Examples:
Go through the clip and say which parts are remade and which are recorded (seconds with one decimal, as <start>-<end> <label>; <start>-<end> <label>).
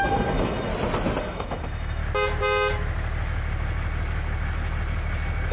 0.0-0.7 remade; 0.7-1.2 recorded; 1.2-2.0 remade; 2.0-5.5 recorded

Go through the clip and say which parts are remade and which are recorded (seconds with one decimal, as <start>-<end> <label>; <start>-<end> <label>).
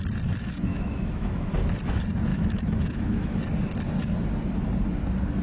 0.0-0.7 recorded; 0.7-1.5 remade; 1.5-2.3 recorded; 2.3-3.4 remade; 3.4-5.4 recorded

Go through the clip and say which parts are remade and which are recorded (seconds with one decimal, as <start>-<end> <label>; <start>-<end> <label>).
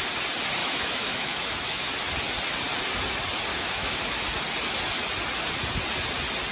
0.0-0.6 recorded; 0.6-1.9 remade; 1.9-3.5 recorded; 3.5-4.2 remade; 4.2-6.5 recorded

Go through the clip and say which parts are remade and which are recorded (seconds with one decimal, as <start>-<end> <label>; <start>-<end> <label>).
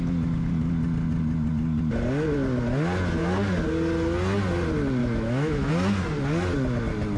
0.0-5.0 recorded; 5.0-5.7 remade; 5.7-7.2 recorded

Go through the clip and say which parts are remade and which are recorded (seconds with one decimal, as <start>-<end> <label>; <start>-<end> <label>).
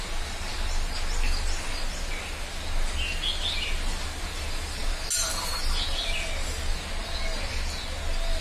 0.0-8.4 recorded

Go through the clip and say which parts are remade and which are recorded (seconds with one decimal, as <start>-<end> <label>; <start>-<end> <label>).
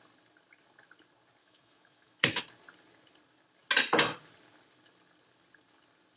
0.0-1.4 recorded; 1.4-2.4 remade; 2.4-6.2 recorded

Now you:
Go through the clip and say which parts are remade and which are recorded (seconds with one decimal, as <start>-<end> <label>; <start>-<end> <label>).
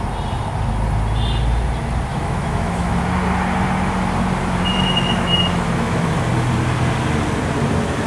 0.0-2.1 recorded; 2.1-3.0 remade; 3.0-4.7 recorded; 4.7-6.1 remade; 6.1-8.1 recorded